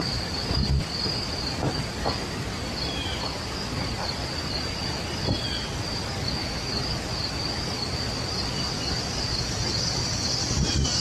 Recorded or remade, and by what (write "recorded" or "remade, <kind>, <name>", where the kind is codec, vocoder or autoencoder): recorded